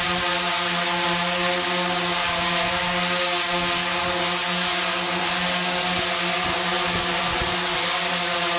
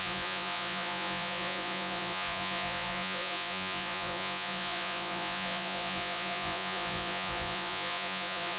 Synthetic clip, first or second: second